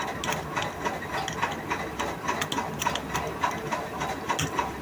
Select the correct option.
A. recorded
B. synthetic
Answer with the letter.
A